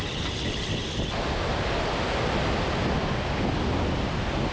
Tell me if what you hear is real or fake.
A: real